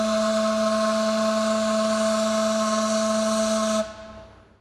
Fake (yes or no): no